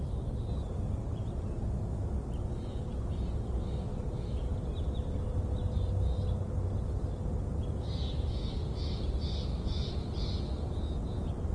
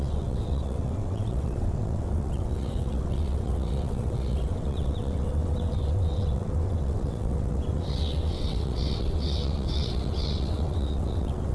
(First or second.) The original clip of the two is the first